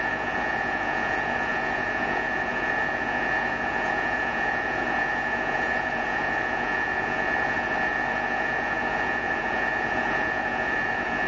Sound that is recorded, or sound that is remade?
remade